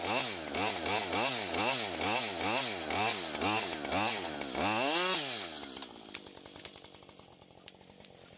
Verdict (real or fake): real